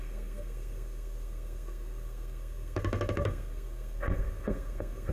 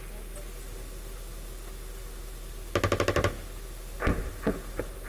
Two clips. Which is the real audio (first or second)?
second